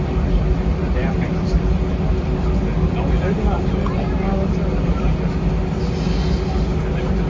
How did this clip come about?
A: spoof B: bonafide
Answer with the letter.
B